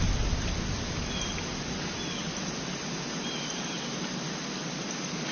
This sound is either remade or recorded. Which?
recorded